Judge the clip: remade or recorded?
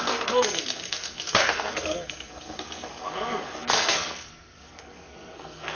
remade